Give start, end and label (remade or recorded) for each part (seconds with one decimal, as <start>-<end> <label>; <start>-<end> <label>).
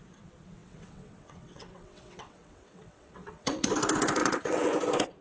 0.0-0.6 recorded; 0.6-3.7 remade; 3.7-4.2 recorded; 4.2-4.7 remade; 4.7-5.2 recorded